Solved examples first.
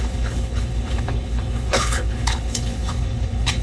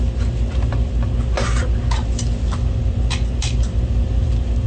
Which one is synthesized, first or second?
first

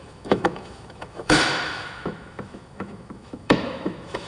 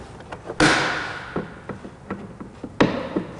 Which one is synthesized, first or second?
first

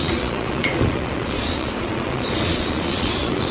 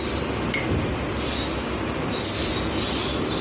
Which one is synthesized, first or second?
first